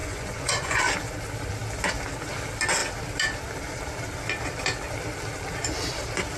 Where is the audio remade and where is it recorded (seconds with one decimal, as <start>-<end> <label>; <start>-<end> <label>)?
0.0-0.8 remade; 0.8-6.4 recorded